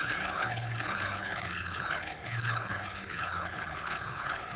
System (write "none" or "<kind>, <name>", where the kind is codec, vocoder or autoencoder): codec, HILCodec